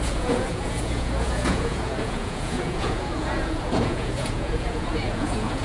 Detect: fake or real fake